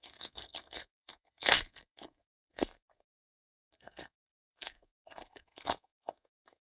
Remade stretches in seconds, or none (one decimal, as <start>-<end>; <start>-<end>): 0.0-6.6